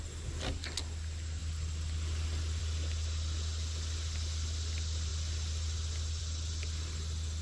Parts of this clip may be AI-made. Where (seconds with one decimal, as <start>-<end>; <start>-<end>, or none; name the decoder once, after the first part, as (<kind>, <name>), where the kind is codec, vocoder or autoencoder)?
none